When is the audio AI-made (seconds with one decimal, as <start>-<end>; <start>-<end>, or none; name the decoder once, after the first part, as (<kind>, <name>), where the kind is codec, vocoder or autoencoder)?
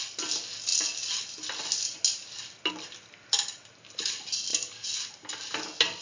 none